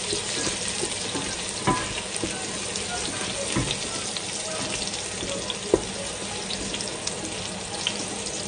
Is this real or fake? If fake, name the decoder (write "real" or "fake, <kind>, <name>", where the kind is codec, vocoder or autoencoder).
real